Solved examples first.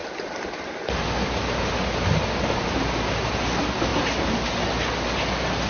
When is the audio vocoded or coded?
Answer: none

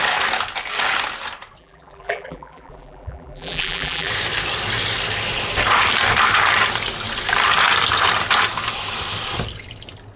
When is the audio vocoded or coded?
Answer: 1.6-4.1

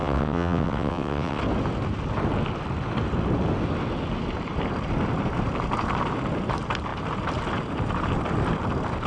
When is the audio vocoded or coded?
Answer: 0.0-1.4